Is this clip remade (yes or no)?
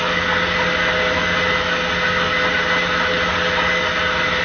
no